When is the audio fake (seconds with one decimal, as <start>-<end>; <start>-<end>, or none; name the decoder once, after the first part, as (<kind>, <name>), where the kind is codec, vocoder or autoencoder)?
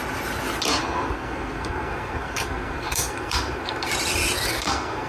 0.8-3.9 (codec, SNAC); 4.5-5.1